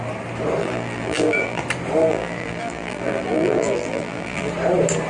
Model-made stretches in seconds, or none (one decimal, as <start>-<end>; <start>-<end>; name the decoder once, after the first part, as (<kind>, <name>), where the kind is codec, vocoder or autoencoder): 0.6-1.6 (vocoder, BigVGAN v2); 2.0-4.5